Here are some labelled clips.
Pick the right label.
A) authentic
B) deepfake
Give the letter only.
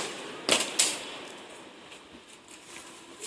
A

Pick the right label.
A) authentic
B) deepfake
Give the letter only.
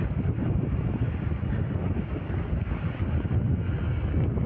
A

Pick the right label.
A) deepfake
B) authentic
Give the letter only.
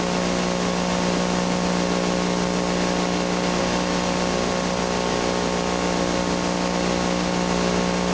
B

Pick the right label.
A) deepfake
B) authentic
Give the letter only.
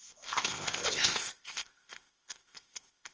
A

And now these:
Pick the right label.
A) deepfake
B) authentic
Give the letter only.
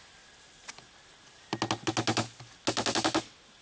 B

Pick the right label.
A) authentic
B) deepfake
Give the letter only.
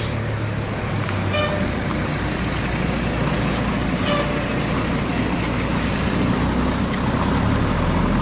A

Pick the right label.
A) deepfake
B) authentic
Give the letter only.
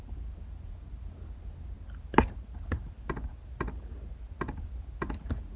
B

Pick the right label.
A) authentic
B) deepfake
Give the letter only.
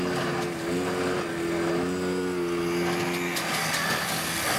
A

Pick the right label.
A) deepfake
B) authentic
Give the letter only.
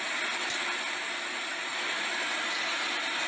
B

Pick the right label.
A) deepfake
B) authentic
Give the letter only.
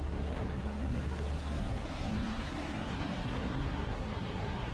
A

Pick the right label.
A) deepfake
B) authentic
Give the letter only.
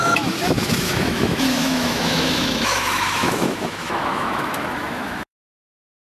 A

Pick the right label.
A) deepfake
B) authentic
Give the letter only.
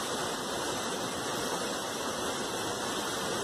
A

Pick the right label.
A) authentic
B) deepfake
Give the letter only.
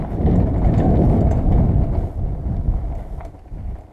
A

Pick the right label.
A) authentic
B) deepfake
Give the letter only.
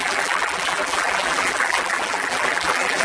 B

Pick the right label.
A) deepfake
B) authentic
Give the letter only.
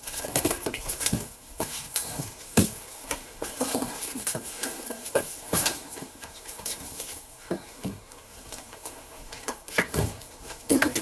A